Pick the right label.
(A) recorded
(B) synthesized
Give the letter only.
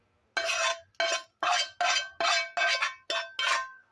A